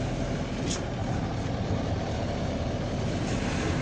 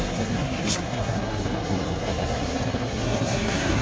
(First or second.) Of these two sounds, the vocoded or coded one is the second